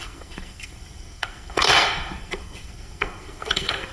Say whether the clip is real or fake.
fake